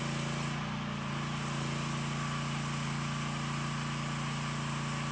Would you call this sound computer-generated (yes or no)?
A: no